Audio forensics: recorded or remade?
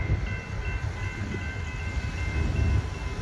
recorded